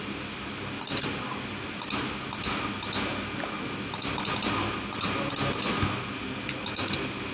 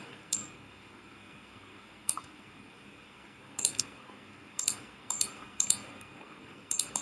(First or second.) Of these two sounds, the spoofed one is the second